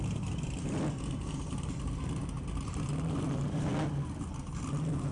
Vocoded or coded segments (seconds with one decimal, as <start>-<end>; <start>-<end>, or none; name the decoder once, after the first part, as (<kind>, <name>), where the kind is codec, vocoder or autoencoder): 0.0-3.7 (vocoder, BigVGAN v2); 4.6-5.1